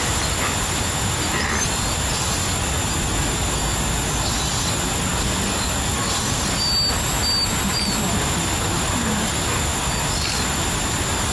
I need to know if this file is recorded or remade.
recorded